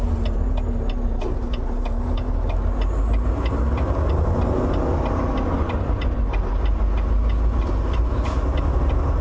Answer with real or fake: real